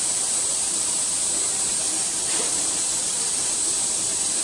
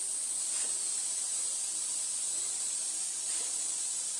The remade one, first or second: first